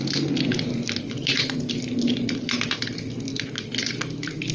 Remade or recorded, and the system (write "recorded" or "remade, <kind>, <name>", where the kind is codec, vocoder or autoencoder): recorded